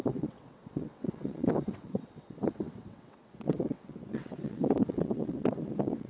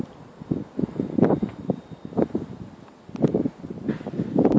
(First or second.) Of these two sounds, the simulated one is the first